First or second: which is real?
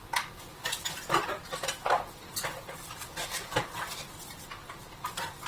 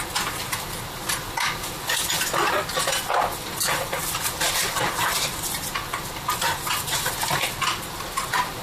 first